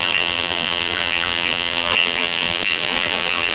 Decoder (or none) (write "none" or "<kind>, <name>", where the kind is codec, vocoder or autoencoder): vocoder, BigVGAN v2